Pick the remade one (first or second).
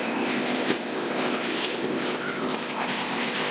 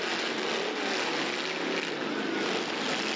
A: first